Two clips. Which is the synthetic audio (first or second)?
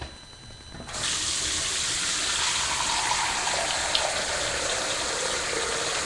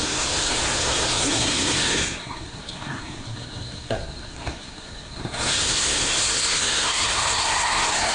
second